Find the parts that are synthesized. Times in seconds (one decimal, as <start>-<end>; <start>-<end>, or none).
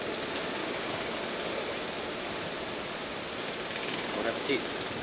0.6-1.2; 3.8-4.5